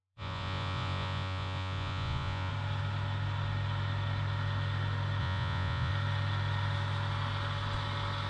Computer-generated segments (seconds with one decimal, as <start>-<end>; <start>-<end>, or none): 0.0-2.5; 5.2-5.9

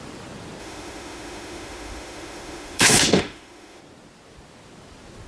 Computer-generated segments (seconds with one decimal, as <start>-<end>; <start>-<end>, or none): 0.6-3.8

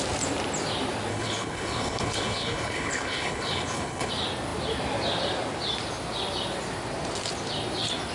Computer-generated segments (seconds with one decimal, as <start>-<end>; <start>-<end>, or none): 1.1-4.1

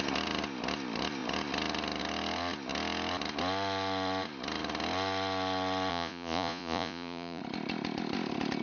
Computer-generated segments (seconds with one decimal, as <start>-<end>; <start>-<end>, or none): 5.9-7.4